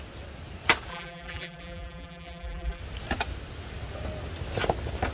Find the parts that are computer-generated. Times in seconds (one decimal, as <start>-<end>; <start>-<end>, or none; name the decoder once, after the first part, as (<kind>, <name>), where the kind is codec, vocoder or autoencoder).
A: 0.9-2.8 (vocoder, BigVGAN v2)

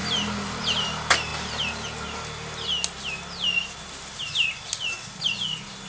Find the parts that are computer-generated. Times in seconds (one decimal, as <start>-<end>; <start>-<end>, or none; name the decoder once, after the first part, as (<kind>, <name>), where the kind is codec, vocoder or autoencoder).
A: 0.0-0.6 (vocoder, BigVGAN v2)

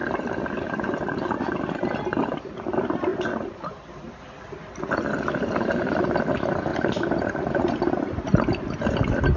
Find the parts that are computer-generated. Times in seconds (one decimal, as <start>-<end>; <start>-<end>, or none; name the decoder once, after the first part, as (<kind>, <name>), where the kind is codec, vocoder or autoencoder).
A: 3.1-4.2 (vocoder, BigVGAN v2); 6.7-7.9

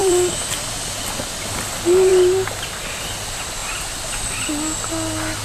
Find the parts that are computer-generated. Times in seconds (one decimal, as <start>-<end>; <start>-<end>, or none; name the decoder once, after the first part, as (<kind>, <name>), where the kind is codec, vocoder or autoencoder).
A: 0.0-0.7 (vocoder, BigVGAN v2); 3.6-4.4

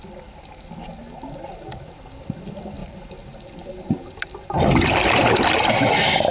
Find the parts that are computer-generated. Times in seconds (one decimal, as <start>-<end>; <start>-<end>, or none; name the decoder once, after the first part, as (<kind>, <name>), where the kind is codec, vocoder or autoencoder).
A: 2.8-5.2 (vocoder, BigVGAN v2)

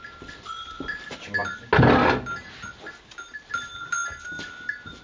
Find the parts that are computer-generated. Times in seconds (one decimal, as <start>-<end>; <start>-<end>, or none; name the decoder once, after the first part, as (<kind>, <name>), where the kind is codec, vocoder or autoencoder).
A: 0.0-1.4 (vocoder, BigVGAN v2); 4.4-5.0

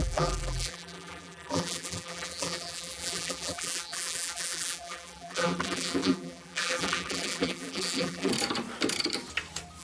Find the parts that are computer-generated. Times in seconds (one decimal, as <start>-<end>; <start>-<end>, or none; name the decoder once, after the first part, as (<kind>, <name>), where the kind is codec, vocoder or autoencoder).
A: 0.0-8.3 (vocoder, BigVGAN v2)

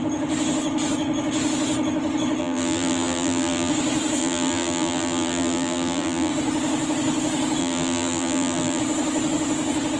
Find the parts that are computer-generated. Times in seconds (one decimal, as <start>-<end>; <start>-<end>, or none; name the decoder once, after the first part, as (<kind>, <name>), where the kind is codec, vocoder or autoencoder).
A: 2.4-3.7 (vocoder, BigVGAN v2); 4.2-6.3; 7.6-8.8